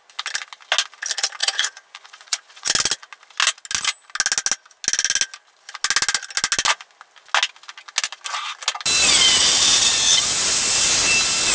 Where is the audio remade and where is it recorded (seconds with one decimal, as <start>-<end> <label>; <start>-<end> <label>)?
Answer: 0.0-1.4 recorded; 1.4-2.7 remade; 2.7-11.5 recorded